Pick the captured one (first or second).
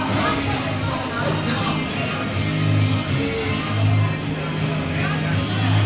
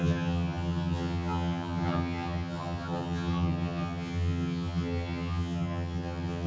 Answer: first